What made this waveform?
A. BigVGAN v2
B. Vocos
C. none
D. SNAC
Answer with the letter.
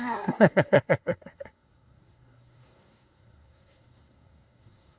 D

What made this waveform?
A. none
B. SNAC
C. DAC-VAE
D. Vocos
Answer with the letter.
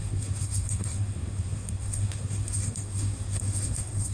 B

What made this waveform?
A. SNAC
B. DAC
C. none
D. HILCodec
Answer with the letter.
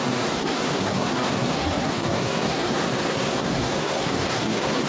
A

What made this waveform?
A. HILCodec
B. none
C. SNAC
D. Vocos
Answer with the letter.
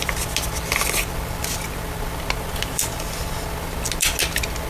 B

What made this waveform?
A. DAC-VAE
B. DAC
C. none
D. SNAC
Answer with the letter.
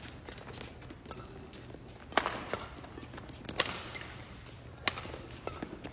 C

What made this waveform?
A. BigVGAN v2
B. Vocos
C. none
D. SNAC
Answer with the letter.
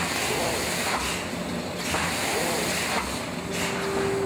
C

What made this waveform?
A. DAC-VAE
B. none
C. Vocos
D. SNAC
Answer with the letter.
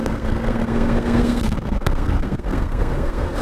D